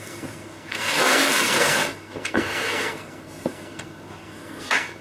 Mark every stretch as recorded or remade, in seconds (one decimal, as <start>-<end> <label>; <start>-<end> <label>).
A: 0.0-5.0 remade